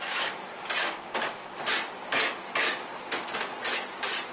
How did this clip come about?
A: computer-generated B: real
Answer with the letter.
B